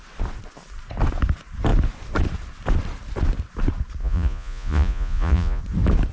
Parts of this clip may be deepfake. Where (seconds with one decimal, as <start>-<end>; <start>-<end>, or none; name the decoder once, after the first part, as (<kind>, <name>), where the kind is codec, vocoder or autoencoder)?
4.0-5.6 (vocoder, Vocos)

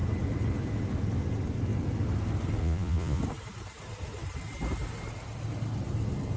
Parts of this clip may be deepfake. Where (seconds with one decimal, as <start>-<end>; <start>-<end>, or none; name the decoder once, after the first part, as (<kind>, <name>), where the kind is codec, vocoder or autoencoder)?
2.6-3.2 (vocoder, Vocos)